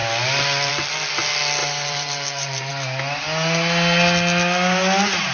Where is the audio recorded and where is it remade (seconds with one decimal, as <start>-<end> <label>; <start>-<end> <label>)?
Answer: 0.0-1.6 recorded; 1.6-2.7 remade; 2.7-5.3 recorded